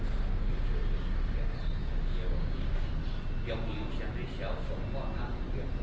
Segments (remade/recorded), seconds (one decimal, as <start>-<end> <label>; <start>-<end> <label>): 0.0-1.8 recorded; 1.8-2.9 remade; 2.9-5.8 recorded